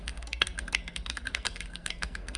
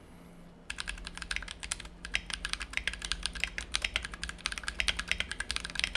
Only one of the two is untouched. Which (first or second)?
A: second